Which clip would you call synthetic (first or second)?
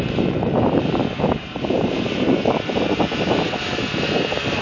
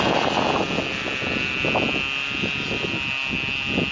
first